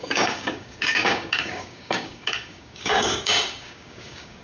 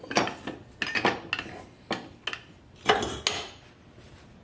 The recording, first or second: second